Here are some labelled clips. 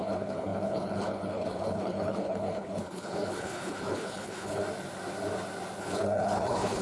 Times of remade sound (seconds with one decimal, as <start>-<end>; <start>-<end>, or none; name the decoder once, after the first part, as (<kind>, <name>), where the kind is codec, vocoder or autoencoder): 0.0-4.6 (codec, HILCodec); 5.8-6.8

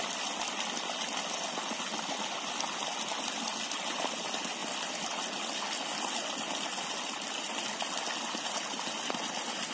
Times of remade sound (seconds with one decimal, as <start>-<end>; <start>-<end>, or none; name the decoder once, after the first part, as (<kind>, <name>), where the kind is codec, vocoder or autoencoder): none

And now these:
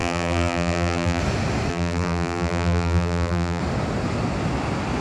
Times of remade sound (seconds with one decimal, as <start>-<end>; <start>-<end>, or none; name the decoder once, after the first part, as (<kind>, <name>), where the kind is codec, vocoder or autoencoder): 0.0-1.2 (vocoder, BigVGAN v2); 1.7-3.6

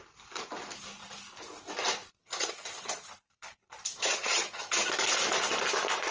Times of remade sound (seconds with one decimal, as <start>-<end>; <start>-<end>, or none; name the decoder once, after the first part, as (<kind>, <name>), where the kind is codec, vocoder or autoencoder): 2.2-3.1 (vocoder, HiFi-GAN); 3.9-4.9

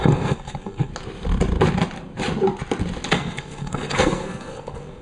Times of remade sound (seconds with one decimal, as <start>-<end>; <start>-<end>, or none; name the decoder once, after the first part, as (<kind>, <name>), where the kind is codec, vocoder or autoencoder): 0.0-0.9 (codec, SNAC); 3.1-5.0

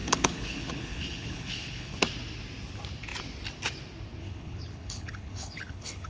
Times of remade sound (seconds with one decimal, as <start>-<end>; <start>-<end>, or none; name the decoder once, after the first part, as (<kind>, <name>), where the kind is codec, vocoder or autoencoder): 0.0-2.0 (codec, HILCodec); 4.2-6.1

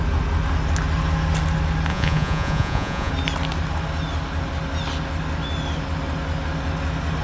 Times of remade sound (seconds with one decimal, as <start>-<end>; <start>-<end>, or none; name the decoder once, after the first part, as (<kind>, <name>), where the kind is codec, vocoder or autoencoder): 1.9-3.1 (vocoder, Vocos)

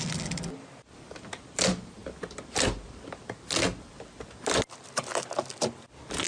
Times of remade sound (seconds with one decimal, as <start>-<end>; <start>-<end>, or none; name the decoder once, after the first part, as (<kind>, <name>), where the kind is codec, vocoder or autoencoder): none